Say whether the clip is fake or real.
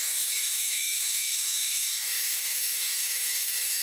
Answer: fake